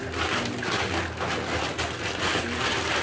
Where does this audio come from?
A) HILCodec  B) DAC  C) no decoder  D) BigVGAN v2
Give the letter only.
C